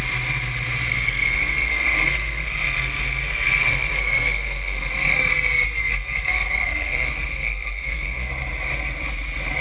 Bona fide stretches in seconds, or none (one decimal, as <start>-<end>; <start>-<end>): 0.0-0.9; 5.3-5.8; 8.3-9.6